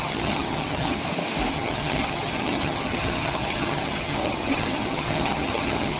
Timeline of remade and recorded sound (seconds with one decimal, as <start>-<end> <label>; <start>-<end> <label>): 0.0-1.0 remade; 1.0-1.5 recorded; 1.5-6.0 remade